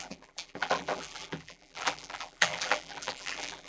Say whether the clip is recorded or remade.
remade